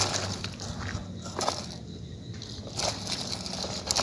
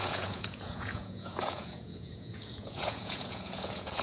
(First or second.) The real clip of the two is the first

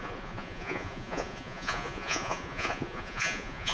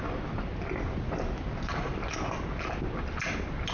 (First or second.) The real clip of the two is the second